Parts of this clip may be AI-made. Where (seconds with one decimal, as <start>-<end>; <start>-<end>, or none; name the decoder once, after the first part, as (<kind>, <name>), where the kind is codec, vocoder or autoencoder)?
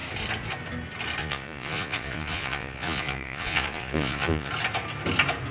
1.2-4.5 (vocoder, Vocos)